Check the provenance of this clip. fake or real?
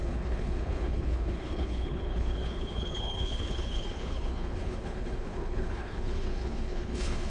fake